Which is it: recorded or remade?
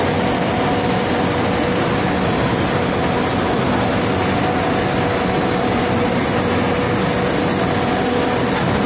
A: recorded